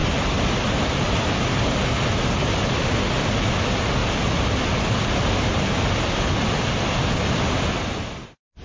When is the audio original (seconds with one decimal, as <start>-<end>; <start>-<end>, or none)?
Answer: 0.0-8.6